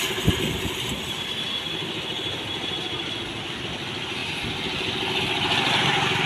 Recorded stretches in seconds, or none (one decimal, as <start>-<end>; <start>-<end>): 0.0-6.3